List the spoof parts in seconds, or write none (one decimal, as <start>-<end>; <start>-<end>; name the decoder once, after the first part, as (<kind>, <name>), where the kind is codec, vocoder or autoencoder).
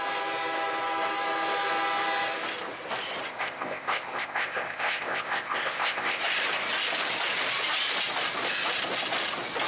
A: 3.3-6.2 (codec, ZipCodec)